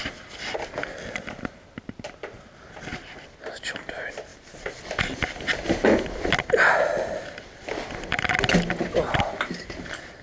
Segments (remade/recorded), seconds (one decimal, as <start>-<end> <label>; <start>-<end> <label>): 0.0-10.2 recorded